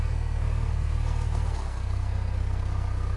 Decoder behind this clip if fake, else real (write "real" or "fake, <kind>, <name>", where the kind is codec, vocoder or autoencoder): fake, codec, SNAC